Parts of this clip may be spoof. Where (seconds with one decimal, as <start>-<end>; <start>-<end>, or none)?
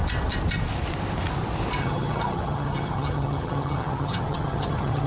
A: 1.8-5.1